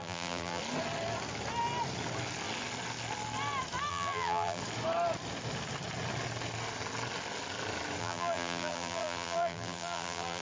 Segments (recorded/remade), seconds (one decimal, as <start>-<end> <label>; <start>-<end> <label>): 0.0-0.6 remade; 0.6-3.9 recorded; 3.9-4.6 remade; 4.6-8.0 recorded; 8.0-10.4 remade